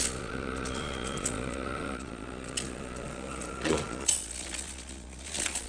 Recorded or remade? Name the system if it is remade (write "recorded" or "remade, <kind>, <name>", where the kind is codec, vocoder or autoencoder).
remade, vocoder, Vocos